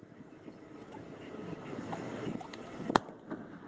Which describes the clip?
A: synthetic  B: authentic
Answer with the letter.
B